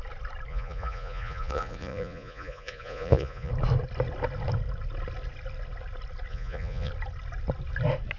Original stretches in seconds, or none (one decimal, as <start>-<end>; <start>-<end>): 0.0-0.5; 3.5-6.3; 6.9-8.2